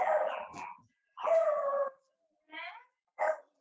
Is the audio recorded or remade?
remade